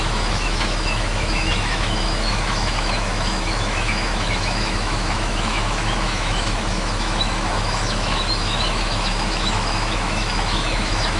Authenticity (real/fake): fake